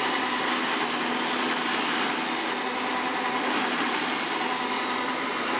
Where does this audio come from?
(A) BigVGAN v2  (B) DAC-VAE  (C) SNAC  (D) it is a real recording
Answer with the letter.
D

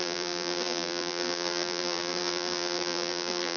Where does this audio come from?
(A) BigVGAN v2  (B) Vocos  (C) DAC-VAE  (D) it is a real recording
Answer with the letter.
A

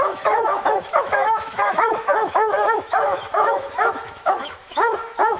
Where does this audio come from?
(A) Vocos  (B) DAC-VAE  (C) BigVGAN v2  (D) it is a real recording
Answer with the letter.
B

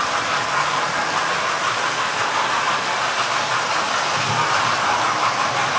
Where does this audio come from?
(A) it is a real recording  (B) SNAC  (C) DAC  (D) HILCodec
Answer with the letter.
A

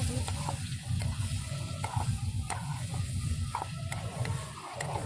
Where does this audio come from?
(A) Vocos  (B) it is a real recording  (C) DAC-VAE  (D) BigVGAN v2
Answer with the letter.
A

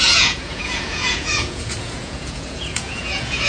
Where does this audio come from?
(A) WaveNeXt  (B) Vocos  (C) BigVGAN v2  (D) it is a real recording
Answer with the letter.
B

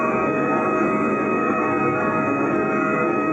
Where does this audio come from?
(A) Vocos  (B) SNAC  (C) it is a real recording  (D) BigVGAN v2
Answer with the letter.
B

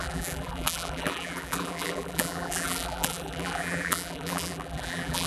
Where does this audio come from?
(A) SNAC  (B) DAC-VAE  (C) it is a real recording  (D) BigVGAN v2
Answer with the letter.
D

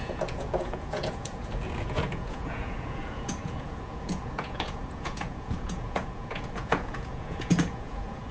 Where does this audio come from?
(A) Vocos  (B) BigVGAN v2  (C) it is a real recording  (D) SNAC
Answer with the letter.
A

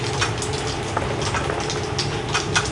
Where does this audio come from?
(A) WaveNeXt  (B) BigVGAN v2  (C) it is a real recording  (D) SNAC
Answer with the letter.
C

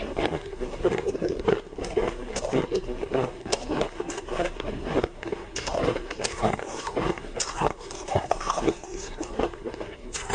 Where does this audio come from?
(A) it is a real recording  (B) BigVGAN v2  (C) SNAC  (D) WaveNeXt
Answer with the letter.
C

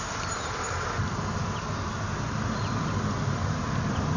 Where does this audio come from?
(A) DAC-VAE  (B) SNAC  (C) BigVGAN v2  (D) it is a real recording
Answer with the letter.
D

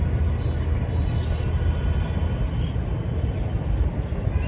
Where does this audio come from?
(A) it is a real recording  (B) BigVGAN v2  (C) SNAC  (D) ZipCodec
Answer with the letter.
A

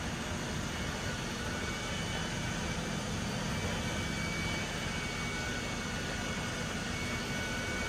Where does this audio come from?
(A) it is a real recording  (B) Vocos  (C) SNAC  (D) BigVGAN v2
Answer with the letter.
A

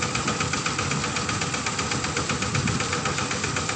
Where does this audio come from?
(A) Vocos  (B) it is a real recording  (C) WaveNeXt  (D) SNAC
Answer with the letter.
B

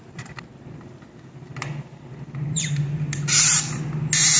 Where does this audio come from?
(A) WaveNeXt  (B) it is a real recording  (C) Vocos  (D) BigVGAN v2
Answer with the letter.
B